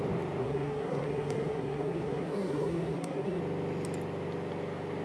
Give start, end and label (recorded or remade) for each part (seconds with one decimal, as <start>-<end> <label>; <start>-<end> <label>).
0.0-0.4 recorded; 0.4-3.4 remade; 3.4-5.0 recorded